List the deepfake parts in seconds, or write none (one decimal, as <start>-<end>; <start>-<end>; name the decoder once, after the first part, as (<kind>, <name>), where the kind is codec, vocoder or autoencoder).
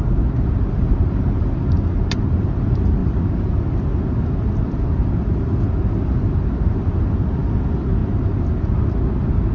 none